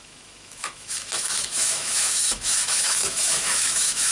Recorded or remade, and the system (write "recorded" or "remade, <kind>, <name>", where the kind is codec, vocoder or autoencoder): remade, autoencoder, DAC-VAE